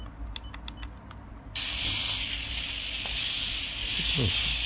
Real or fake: real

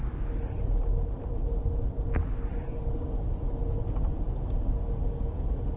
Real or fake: real